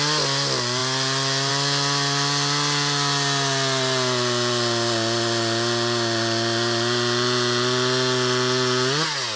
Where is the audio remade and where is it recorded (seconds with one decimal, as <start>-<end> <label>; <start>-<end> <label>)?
0.0-9.4 recorded